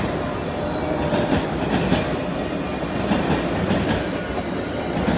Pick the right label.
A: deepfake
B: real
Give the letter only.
B